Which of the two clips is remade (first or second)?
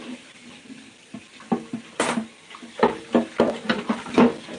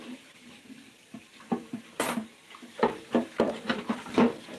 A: second